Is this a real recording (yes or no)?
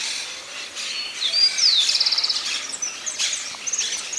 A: yes